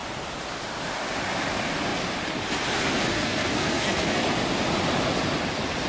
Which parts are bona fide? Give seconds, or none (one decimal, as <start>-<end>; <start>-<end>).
0.0-3.1; 4.2-5.9